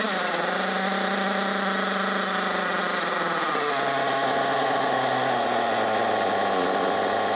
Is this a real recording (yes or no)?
yes